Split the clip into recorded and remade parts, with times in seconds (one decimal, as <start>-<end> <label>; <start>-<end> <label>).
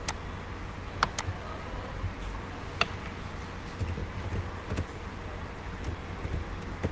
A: 0.0-6.9 recorded